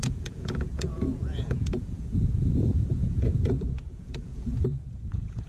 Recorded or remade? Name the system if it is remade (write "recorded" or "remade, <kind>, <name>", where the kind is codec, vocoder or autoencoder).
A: remade, vocoder, Vocos